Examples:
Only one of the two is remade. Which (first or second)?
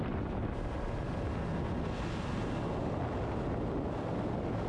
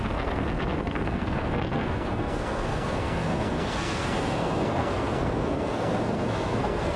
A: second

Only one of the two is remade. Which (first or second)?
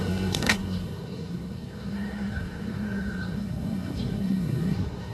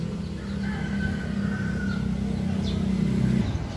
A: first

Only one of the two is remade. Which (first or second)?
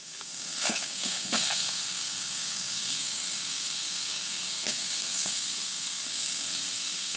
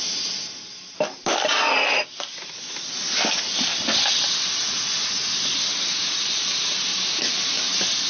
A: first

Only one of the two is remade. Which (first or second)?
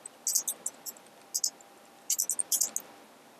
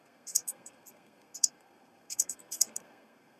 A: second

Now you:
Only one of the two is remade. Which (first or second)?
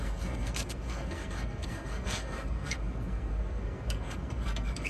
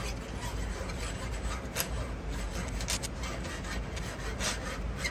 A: first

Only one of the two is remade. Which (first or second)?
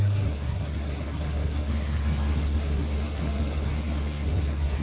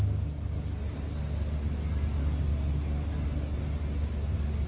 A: first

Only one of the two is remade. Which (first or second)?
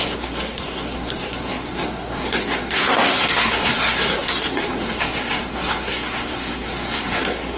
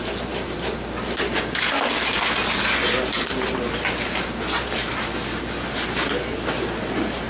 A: first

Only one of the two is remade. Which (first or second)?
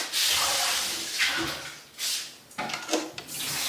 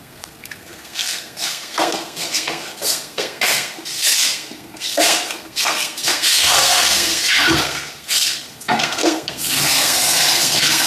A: second